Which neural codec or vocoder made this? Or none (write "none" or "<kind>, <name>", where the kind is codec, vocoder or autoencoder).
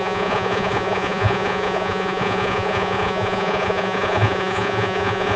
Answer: vocoder, Vocos